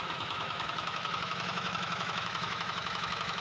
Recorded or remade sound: remade